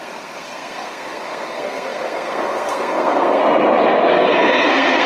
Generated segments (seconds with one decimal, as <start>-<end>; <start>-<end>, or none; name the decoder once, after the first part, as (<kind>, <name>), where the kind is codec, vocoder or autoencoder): 0.0-3.4 (codec, SNAC); 4.1-5.1